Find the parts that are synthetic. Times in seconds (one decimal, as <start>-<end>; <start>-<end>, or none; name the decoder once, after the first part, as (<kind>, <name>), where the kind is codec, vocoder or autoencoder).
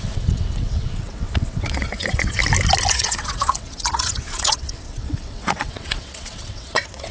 0.0-2.4 (vocoder, WaveNeXt); 2.9-7.1